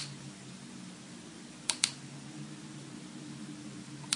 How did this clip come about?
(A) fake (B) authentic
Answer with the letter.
B